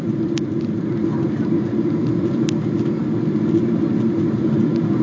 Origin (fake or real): fake